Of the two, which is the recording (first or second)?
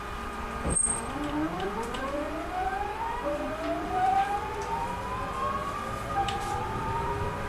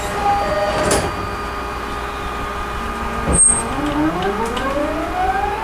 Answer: second